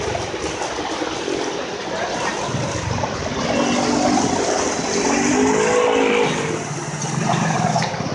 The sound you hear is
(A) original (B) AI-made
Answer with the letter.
A